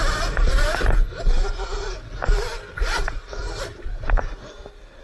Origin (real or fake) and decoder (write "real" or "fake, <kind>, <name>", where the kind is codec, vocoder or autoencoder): real